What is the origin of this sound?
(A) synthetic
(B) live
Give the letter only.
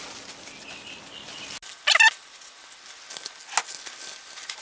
B